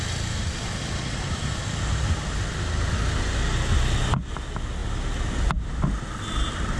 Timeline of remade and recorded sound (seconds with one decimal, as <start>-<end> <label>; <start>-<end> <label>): 0.0-6.8 recorded